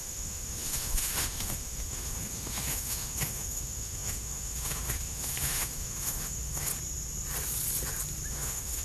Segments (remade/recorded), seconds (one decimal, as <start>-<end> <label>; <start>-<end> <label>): 0.0-6.7 remade; 6.7-8.3 recorded; 8.3-8.8 remade

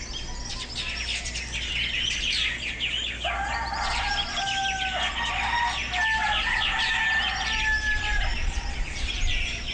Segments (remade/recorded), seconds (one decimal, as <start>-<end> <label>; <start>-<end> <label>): 0.0-8.3 recorded; 8.3-9.1 remade; 9.1-9.7 recorded

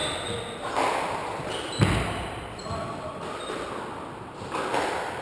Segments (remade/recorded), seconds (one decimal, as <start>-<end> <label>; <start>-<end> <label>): 0.0-5.2 recorded

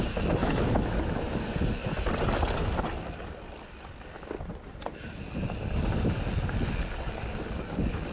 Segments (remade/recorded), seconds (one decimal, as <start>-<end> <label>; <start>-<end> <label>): 0.0-0.4 recorded; 0.4-1.0 remade; 1.0-8.1 recorded

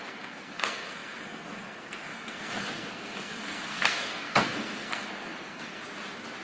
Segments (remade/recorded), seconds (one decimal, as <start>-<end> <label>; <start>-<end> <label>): 0.0-5.8 remade; 5.8-6.4 recorded

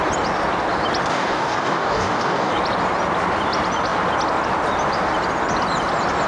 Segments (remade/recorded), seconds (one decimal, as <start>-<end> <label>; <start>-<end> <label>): 0.0-1.1 recorded; 1.1-2.5 remade; 2.5-6.3 recorded